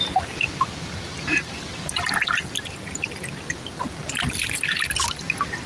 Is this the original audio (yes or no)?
yes